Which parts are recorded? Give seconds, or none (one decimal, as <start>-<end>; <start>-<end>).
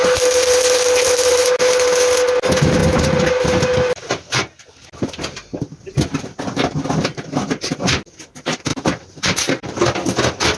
0.0-8.7; 9.8-10.6